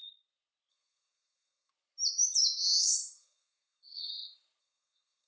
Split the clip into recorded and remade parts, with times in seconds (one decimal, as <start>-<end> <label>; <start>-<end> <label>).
0.0-0.7 recorded; 0.7-1.7 remade; 1.7-2.8 recorded; 2.8-4.1 remade; 4.1-4.6 recorded; 4.6-5.3 remade